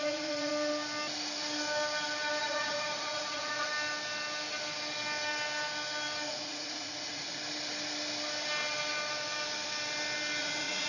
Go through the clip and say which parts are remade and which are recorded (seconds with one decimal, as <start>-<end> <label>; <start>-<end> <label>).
0.0-0.5 remade; 0.5-2.4 recorded; 2.4-3.7 remade; 3.7-6.3 recorded; 6.3-7.4 remade; 7.4-10.4 recorded; 10.4-10.9 remade